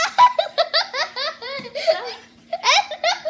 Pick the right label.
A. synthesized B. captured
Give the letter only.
A